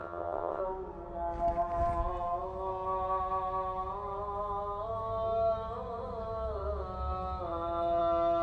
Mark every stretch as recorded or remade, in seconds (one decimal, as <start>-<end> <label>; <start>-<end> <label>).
0.0-0.6 remade; 0.6-8.4 recorded